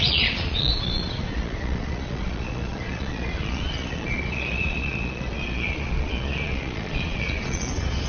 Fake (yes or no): yes